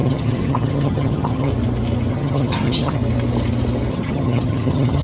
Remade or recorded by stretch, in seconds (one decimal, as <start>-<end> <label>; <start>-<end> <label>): 0.0-1.5 remade; 1.5-2.1 recorded; 2.1-3.0 remade; 3.0-3.9 recorded; 3.9-5.0 remade